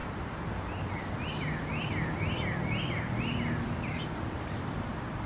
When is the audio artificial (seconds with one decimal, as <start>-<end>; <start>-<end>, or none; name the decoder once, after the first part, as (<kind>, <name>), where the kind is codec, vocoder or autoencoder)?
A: 0.0-0.6 (vocoder, BigVGAN v2); 1.7-5.3